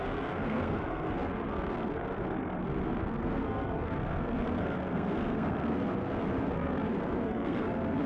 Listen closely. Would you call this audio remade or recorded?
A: remade